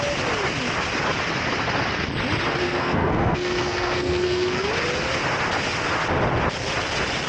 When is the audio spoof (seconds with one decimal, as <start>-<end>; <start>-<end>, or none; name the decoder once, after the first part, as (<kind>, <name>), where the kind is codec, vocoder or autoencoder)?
2.6-4.7 (codec, SNAC)